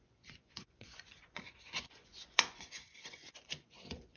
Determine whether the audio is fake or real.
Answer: fake